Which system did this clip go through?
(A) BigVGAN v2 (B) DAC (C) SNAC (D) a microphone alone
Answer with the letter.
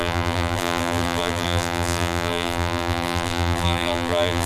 A